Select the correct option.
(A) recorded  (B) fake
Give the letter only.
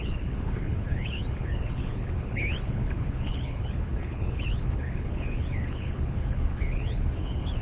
B